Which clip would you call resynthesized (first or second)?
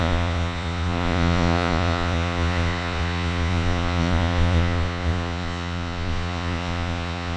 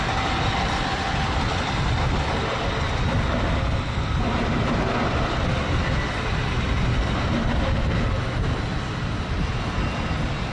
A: first